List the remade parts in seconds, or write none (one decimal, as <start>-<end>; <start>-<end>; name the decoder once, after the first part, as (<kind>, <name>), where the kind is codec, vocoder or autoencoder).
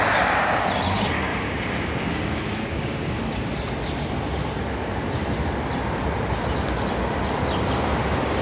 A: 1.3-3.2 (codec, DAC)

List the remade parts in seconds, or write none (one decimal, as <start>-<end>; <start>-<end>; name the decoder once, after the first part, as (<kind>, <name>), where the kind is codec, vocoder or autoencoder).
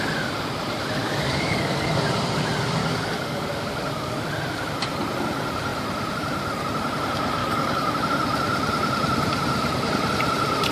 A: 1.0-2.0 (codec, DAC); 2.8-4.3; 7.4-7.9